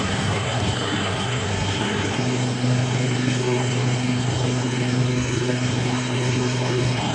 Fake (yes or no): yes